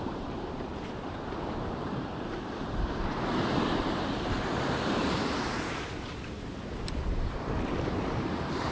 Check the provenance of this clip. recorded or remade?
remade